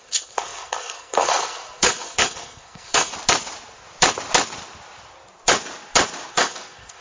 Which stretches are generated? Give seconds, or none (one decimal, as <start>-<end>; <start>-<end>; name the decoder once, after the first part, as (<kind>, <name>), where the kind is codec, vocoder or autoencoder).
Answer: 0.0-3.1 (codec, SNAC); 6.3-7.0